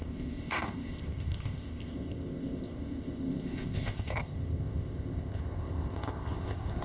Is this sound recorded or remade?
remade